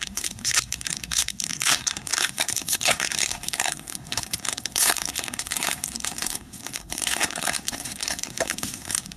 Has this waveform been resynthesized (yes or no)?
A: yes